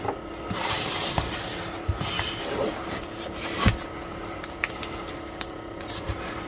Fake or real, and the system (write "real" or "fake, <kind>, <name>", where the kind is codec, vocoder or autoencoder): real